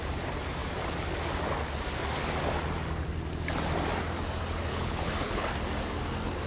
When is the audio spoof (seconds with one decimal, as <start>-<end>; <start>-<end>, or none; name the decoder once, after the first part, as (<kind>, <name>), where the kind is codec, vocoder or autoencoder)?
4.7-5.5 (codec, HILCodec)